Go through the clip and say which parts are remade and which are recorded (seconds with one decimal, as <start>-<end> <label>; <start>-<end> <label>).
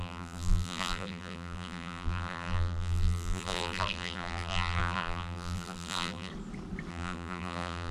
0.0-6.3 remade; 6.3-6.9 recorded; 6.9-7.9 remade